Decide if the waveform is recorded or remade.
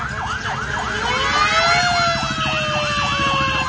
recorded